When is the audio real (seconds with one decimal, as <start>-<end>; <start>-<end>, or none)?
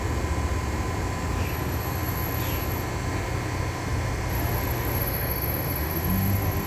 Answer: 0.0-4.3